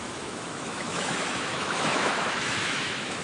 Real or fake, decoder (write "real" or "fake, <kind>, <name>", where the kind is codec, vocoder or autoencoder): fake, autoencoder, DAC-VAE